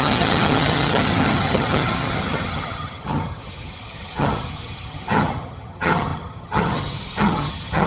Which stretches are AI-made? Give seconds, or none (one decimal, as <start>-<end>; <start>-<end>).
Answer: 0.0-7.9